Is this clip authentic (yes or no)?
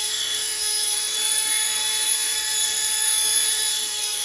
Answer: no